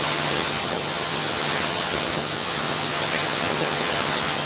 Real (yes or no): no